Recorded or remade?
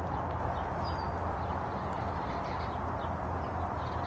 recorded